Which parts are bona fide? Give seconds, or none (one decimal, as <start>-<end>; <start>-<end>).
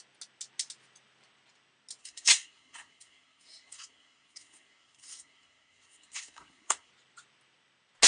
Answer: 0.0-2.0; 6.9-8.1